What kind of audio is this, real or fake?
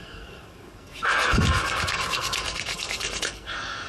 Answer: fake